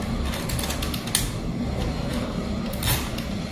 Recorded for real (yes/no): yes